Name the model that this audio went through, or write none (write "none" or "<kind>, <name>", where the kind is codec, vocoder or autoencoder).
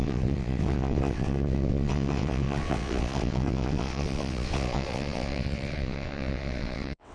vocoder, WaveNeXt